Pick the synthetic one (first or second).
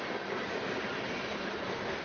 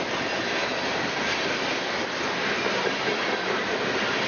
first